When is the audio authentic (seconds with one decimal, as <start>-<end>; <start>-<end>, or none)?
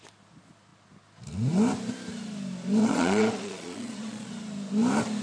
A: 0.0-2.8; 4.3-5.2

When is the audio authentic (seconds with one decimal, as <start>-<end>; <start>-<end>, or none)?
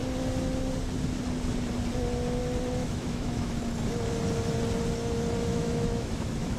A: 0.0-2.8; 3.5-5.5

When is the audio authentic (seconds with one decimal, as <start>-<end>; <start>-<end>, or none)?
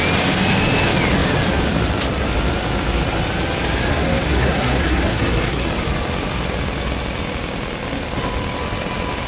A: 0.0-3.9; 5.7-9.3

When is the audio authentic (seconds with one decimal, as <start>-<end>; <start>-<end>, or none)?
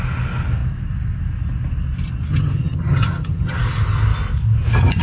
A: 0.0-2.3; 3.6-5.0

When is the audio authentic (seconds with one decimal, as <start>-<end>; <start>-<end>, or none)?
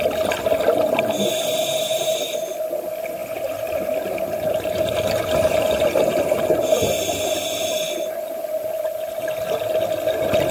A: 0.0-10.5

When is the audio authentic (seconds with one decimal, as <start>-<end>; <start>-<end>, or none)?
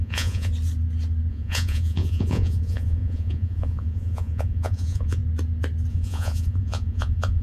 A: 0.5-1.3; 5.2-5.9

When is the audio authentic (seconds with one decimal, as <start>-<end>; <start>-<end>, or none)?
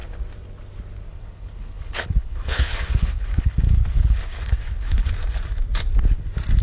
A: 0.0-1.1; 5.1-6.6